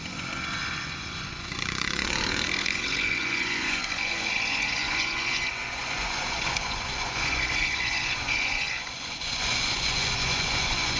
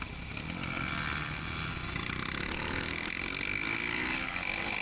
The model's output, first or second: first